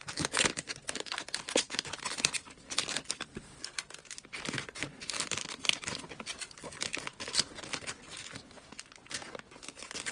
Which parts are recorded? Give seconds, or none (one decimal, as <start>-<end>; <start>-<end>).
0.0-10.1